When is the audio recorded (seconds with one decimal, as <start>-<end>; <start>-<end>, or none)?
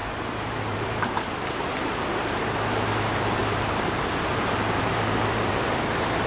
1.5-3.4; 5.7-6.3